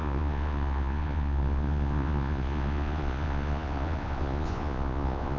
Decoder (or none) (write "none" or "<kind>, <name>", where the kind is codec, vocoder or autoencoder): vocoder, Vocos